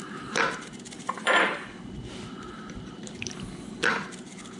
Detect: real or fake fake